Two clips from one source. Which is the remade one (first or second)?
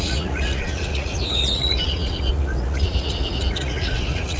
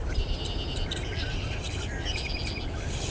first